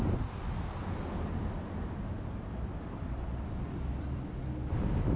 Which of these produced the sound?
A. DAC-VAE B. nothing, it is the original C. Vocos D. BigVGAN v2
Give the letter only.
B